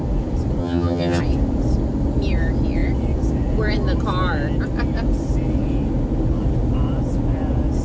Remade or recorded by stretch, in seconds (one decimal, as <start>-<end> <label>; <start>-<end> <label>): 0.0-0.6 recorded; 0.6-1.2 remade; 1.2-7.8 recorded